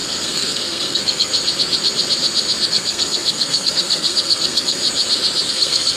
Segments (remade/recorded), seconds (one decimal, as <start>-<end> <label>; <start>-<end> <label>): 0.0-1.3 remade; 1.3-2.7 recorded; 2.7-4.8 remade; 4.8-5.5 recorded; 5.5-6.0 remade